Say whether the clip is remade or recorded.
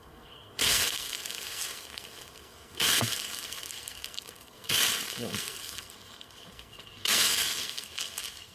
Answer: remade